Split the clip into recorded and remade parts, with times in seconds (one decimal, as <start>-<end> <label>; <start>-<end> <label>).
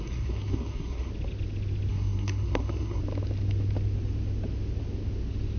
0.0-1.1 remade; 1.1-1.9 recorded; 1.9-3.0 remade; 3.0-5.6 recorded